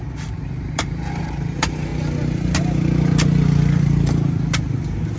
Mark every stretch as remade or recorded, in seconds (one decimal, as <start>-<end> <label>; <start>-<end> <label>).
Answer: 0.0-1.9 remade; 1.9-5.2 recorded